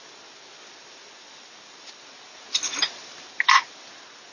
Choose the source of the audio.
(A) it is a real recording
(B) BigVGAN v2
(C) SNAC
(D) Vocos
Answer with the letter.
A